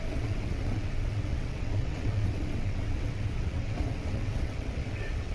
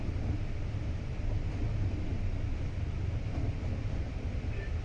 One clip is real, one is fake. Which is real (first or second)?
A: second